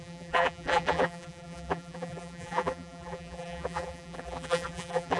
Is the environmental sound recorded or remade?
remade